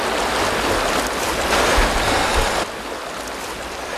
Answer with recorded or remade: recorded